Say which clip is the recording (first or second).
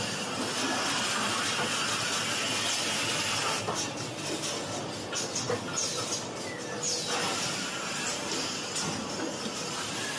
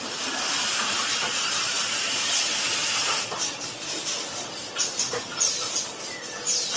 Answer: first